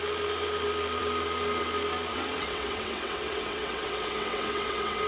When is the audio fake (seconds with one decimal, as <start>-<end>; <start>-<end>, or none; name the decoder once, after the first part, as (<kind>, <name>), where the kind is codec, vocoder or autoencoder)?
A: 2.1-5.1 (vocoder, WaveNeXt)